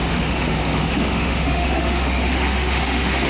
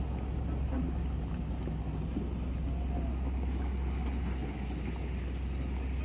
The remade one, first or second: first